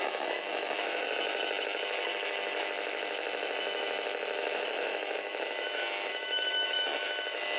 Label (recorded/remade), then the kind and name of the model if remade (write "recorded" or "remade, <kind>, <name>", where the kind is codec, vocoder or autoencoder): remade, autoencoder, DAC-VAE